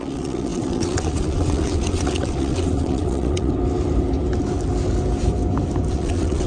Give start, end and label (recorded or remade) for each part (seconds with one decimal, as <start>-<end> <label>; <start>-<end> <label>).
0.0-3.5 remade; 3.5-5.9 recorded; 5.9-6.5 remade